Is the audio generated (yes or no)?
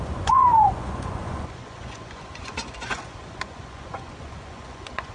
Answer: yes